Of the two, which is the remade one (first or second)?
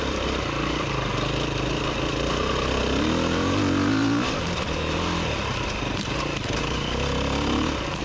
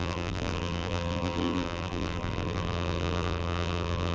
second